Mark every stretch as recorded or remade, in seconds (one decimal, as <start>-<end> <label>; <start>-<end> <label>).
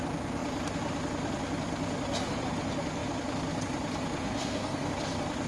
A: 0.0-4.2 recorded; 4.2-4.9 remade; 4.9-5.5 recorded